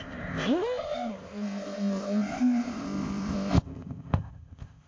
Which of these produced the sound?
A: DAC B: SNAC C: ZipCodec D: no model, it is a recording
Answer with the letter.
C